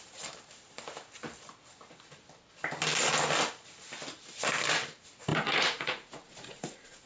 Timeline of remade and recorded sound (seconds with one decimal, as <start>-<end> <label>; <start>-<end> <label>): 0.0-5.3 recorded; 5.3-7.1 remade

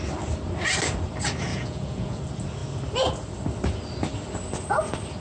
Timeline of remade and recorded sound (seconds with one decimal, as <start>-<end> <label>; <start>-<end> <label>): 0.0-1.5 recorded; 1.5-2.2 remade; 2.2-5.2 recorded

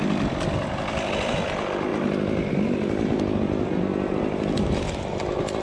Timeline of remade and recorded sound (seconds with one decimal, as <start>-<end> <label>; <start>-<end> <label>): 0.0-5.6 recorded

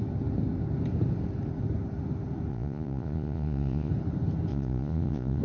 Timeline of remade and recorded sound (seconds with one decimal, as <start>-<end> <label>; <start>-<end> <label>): 0.0-2.5 recorded; 2.5-3.9 remade; 3.9-4.5 recorded; 4.5-5.4 remade

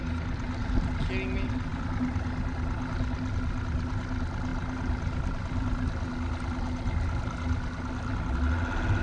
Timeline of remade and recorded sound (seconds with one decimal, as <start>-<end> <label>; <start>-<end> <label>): 0.0-9.0 recorded

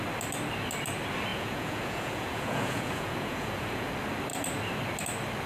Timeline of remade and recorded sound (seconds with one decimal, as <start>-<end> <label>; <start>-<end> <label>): 0.0-1.3 recorded; 1.3-3.9 remade; 3.9-5.5 recorded

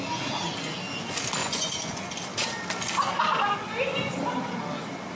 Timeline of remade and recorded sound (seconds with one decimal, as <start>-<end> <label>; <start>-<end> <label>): 0.0-1.4 recorded; 1.4-2.1 remade; 2.1-5.2 recorded